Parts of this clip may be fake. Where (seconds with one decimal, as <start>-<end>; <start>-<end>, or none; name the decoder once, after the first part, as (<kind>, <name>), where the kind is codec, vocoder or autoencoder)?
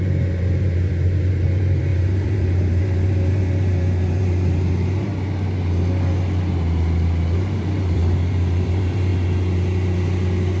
0.0-5.1 (vocoder, BigVGAN v2); 7.5-9.1